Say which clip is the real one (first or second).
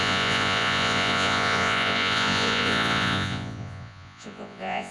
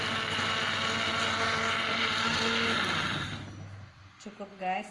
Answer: second